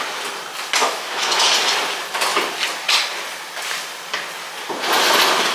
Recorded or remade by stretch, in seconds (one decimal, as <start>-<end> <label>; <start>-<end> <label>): 0.0-0.8 recorded; 0.8-1.3 remade; 1.3-5.5 recorded